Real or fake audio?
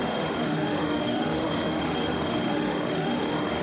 fake